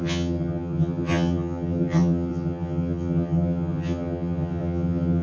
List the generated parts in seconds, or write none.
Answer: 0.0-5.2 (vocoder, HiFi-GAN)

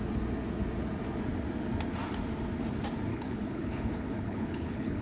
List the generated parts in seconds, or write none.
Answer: 3.1-5.0 (codec, HILCodec)